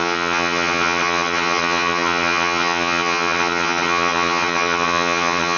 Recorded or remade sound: remade